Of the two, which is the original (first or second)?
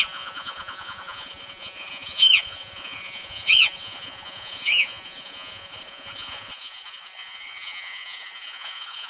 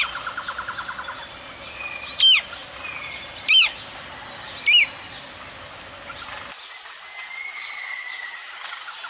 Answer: second